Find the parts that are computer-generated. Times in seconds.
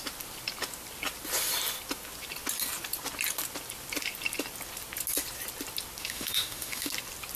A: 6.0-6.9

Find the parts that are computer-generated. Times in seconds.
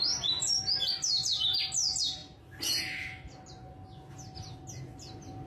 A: none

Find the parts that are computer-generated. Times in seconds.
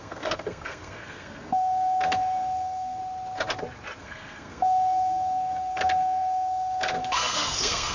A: 0.0-3.0; 4.0-7.9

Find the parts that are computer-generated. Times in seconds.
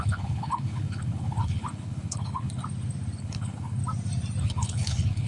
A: 0.0-2.6; 3.2-3.8; 4.4-5.3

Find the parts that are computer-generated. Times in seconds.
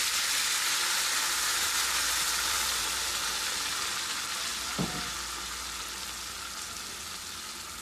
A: 1.5-2.8